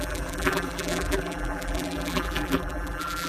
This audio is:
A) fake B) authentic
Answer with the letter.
A